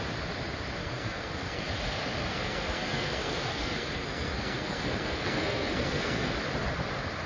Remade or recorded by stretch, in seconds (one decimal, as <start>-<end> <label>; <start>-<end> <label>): 0.0-0.8 recorded; 0.8-1.6 remade; 1.6-2.3 recorded; 2.3-6.3 remade; 6.3-7.3 recorded